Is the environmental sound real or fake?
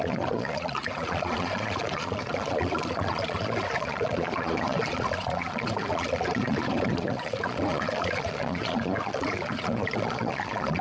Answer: fake